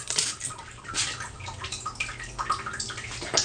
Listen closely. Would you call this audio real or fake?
fake